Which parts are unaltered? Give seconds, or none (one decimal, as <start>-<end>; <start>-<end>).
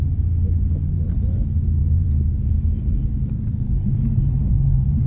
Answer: 0.0-1.8